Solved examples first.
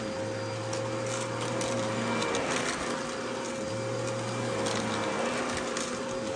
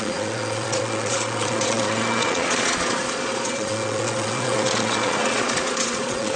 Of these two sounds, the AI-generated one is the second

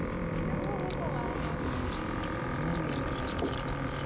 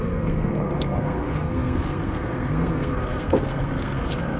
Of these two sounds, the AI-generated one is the second